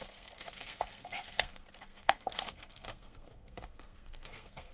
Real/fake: fake